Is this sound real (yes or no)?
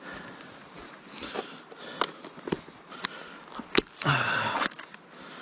yes